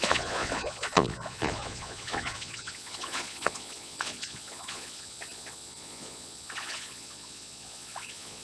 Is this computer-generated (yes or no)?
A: yes